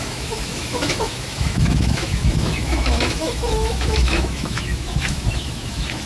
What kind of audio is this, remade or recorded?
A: remade